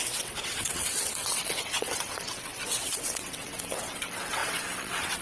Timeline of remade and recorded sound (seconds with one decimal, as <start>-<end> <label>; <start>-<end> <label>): 0.0-5.2 remade